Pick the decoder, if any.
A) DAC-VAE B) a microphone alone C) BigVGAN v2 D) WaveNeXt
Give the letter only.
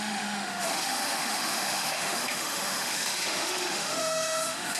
A